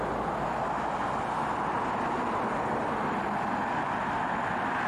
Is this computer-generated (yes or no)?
no